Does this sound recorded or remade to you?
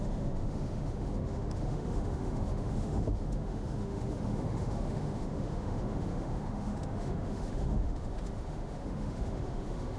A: remade